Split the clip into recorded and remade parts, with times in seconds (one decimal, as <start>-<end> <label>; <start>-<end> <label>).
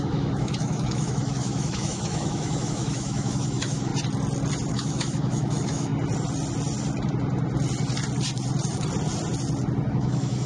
0.0-3.9 remade; 3.9-4.7 recorded; 4.7-5.9 remade; 5.9-9.9 recorded; 9.9-10.5 remade